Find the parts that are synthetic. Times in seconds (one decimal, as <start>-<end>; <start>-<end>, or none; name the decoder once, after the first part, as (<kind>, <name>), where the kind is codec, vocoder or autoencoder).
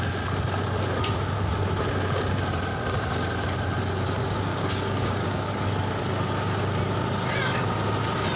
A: 4.5-5.6 (codec, DAC)